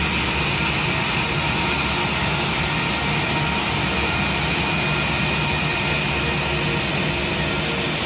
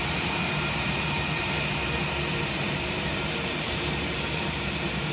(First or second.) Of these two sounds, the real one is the first